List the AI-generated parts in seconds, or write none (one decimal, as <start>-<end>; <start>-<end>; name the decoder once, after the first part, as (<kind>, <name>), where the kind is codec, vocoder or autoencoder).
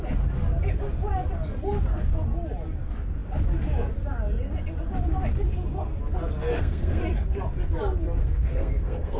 6.5-7.0 (codec, SNAC); 8.2-9.2